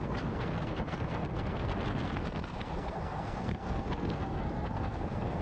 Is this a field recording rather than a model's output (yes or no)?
no